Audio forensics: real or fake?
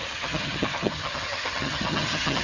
fake